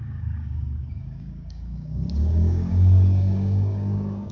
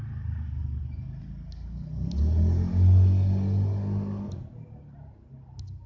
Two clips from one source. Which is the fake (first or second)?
first